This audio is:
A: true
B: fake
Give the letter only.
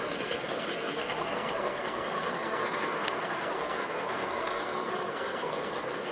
B